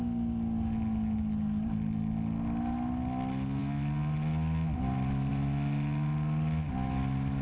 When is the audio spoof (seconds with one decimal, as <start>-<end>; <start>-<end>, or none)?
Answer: none